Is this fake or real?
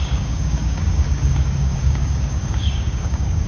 fake